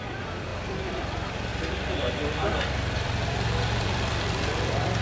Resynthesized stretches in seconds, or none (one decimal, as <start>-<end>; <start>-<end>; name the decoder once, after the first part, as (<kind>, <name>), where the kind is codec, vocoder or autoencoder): 0.0-0.5 (vocoder, BigVGAN v2); 1.0-5.0